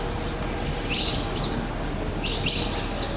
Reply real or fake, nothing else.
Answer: real